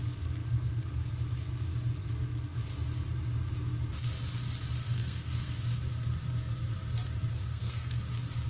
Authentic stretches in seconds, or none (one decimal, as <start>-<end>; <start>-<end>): 0.0-4.8; 5.5-7.3; 8.0-8.5